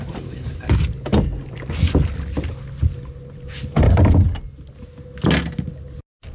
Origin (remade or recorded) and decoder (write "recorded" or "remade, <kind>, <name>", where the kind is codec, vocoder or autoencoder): recorded